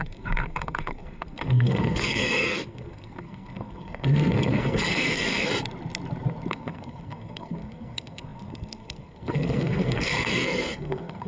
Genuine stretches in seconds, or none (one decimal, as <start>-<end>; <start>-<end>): 5.5-6.5